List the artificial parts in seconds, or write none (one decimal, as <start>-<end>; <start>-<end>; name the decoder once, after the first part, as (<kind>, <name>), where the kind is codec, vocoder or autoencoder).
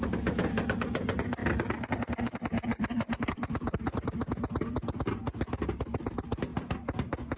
0.0-1.4 (vocoder, BigVGAN v2); 2.8-6.5